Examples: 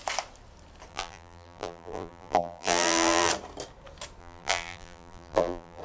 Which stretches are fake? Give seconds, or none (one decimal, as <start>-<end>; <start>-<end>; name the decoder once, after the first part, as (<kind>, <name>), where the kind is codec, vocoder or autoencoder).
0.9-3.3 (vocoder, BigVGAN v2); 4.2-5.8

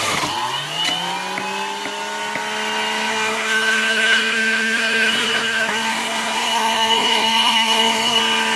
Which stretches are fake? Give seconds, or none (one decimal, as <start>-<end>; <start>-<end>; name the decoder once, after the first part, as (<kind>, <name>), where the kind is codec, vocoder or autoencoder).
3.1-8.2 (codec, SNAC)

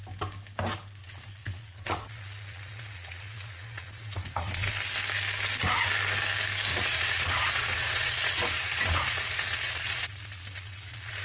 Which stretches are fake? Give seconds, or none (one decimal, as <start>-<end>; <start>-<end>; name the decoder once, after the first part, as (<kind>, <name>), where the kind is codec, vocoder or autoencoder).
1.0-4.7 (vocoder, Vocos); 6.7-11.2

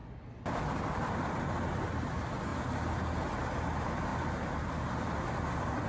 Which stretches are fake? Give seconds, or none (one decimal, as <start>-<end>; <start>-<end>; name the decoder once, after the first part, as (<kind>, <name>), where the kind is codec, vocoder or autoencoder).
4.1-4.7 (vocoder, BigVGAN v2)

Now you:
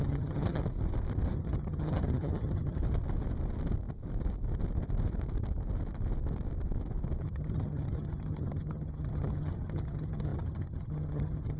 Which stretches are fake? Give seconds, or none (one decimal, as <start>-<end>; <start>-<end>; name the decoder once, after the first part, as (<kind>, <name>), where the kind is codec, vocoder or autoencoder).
0.0-0.6 (vocoder, HiFi-GAN); 1.3-2.8; 7.2-11.6